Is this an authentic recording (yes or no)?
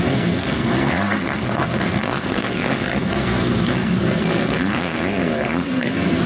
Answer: no